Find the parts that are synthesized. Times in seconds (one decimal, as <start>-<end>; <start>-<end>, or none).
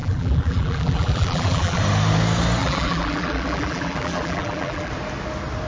0.0-1.8; 2.6-4.9